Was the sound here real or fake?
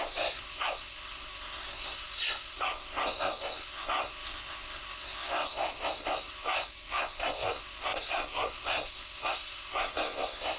fake